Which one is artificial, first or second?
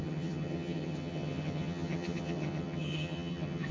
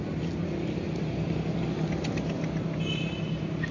first